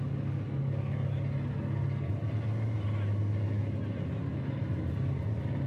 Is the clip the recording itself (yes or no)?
yes